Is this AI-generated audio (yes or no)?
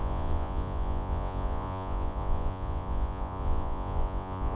yes